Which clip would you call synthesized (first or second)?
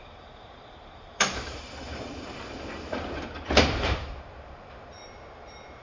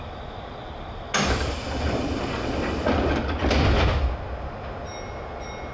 first